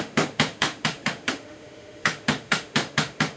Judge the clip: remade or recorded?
remade